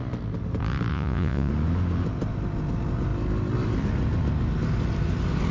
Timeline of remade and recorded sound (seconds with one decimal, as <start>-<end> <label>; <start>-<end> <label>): 0.0-0.9 recorded; 0.9-1.5 remade; 1.5-5.5 recorded